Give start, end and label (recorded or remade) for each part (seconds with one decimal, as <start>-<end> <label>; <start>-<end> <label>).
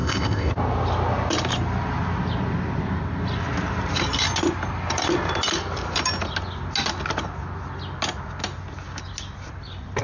0.0-0.5 remade; 0.5-10.0 recorded